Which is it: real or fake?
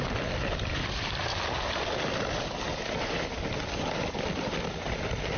real